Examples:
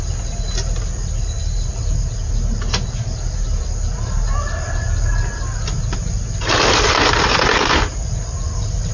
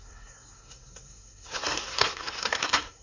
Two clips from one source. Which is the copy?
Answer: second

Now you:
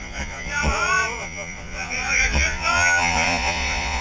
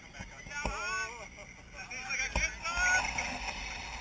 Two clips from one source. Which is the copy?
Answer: first